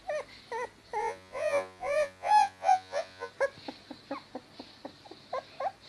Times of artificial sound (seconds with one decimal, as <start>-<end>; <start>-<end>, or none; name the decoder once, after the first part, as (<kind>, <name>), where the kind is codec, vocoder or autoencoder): 1.0-3.3 (vocoder, Vocos)